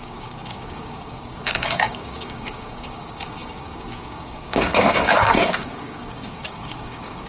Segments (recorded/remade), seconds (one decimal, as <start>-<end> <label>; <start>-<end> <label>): 0.0-7.3 remade